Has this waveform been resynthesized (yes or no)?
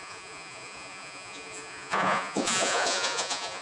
yes